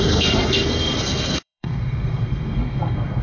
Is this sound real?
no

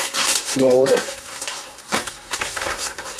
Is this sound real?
no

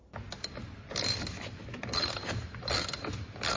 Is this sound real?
yes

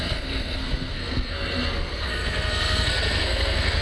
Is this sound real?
no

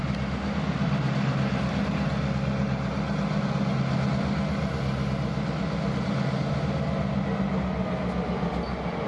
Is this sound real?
yes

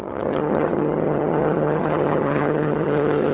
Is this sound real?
no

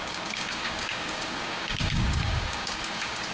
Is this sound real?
no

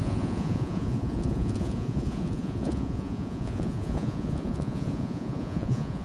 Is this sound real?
no